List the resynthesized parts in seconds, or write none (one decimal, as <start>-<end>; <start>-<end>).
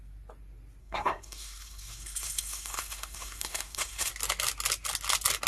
0.8-4.1